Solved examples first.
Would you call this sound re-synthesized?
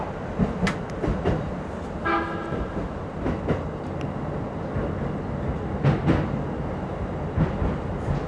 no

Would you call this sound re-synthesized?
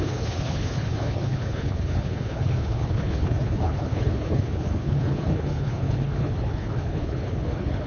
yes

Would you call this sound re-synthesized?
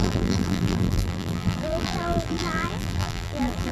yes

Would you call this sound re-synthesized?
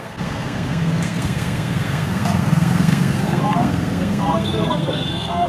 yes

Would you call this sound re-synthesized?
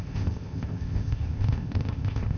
yes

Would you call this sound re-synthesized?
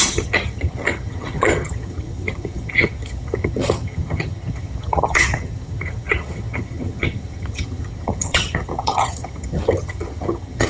yes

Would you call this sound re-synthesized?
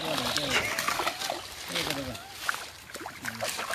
no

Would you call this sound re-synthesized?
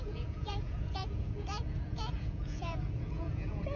yes